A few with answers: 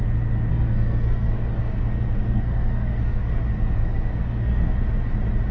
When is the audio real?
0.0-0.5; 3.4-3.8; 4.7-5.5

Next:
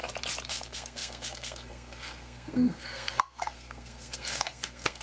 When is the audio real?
0.0-0.5

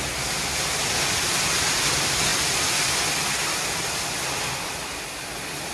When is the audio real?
0.0-5.7